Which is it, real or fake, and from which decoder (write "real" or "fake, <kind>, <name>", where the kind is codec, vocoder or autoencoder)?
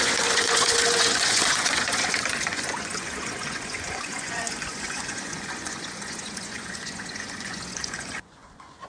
fake, vocoder, Vocos